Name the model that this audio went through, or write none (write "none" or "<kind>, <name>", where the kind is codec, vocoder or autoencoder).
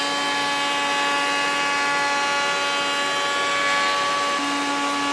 none